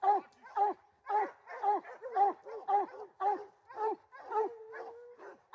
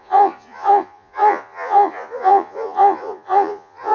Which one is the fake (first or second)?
second